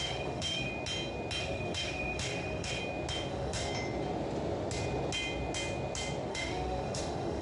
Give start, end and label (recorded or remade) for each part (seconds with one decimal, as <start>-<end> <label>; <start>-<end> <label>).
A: 0.0-0.7 remade; 0.7-1.4 recorded; 1.4-2.8 remade; 2.8-3.3 recorded; 3.3-3.7 remade; 3.7-6.3 recorded; 6.3-7.4 remade